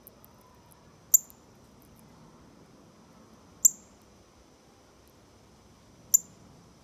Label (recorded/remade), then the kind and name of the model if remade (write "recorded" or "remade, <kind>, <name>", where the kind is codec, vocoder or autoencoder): recorded